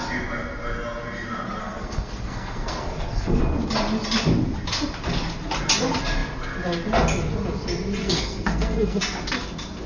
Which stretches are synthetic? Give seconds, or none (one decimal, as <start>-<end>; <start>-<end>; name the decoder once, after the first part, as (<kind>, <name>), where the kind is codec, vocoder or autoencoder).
1.6-3.4 (codec, SNAC); 8.0-9.0